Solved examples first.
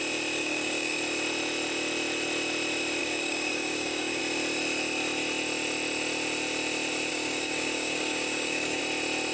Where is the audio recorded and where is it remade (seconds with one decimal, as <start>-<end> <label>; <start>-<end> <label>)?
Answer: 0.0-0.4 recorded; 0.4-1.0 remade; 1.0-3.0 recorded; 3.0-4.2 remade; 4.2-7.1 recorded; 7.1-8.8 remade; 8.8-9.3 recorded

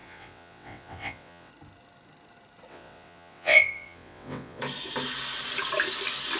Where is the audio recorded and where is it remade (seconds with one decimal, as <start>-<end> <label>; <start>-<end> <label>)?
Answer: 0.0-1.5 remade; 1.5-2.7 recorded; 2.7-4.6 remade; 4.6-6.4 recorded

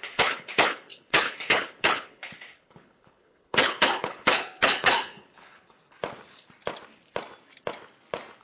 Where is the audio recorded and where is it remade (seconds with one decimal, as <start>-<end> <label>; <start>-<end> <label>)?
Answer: 0.0-5.8 remade; 5.8-8.4 recorded

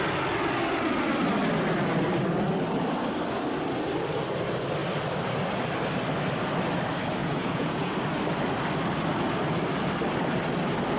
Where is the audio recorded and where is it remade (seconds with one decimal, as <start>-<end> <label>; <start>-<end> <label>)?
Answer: 0.0-7.2 recorded; 7.2-7.9 remade; 7.9-11.0 recorded

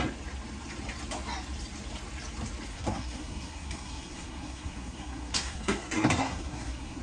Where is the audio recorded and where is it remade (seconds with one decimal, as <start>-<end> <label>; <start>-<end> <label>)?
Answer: 0.0-2.7 recorded; 2.7-7.0 remade

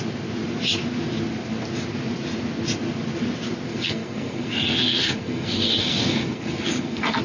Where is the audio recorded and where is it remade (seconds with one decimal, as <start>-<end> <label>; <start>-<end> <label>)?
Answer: 0.0-3.7 recorded; 3.7-7.2 remade

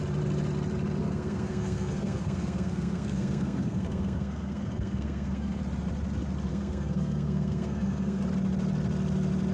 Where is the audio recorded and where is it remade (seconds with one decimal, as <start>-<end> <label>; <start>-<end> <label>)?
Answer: 0.0-1.0 recorded; 1.0-5.6 remade; 5.6-6.5 recorded; 6.5-8.2 remade; 8.2-9.5 recorded

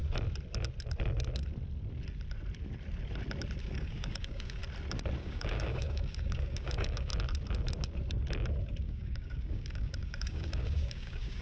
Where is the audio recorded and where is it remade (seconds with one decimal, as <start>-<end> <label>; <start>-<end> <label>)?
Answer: 0.0-3.6 recorded; 3.6-4.6 remade; 4.6-5.2 recorded; 5.2-7.1 remade; 7.1-8.8 recorded; 8.8-11.4 remade